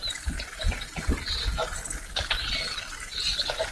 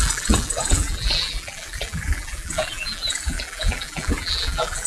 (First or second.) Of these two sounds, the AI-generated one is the second